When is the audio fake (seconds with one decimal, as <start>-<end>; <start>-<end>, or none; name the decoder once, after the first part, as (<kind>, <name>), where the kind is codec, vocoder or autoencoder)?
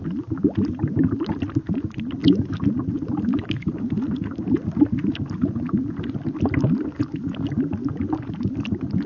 none